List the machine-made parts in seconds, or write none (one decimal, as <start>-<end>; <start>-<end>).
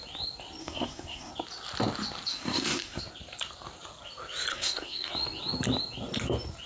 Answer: 0.6-1.3; 2.3-3.0; 4.5-5.1